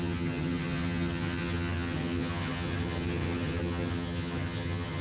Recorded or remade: remade